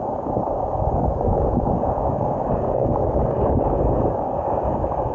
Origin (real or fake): fake